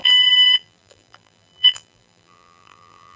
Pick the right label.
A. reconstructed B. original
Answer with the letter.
A